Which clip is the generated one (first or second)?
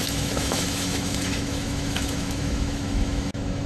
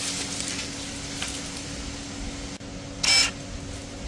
first